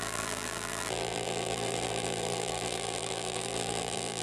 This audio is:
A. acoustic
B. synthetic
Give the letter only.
B